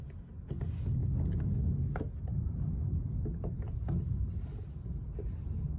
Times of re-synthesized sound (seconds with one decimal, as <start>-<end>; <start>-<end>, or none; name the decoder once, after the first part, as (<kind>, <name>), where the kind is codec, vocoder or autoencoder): none